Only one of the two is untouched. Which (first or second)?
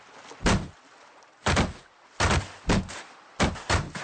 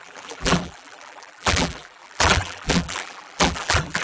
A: first